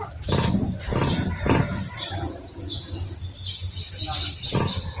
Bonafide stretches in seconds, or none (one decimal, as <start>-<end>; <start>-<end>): 0.0-0.9; 1.8-5.0